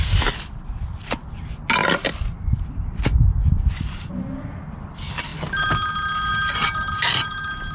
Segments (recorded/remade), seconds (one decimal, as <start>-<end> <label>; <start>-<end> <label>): 0.0-7.7 recorded